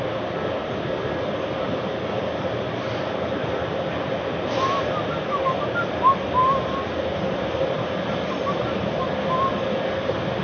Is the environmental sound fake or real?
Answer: real